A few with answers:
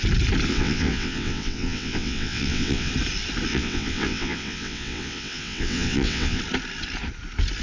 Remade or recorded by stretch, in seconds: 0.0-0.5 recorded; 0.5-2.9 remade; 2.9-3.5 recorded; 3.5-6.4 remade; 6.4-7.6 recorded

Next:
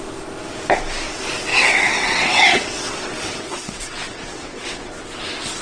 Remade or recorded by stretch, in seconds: 0.0-1.5 recorded; 1.5-4.9 remade; 4.9-5.6 recorded

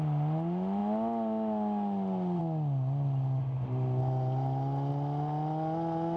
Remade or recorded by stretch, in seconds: 0.0-6.2 recorded

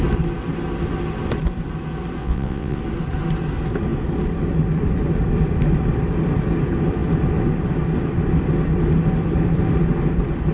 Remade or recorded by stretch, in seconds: 0.0-2.2 recorded; 2.2-2.8 remade; 2.8-10.5 recorded

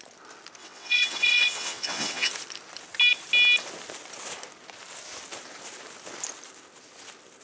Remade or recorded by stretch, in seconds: 0.0-0.6 recorded; 0.6-2.3 remade; 2.3-7.4 recorded

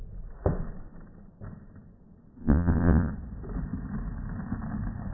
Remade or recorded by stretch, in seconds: 0.0-2.4 recorded; 2.4-3.1 remade; 3.1-5.1 recorded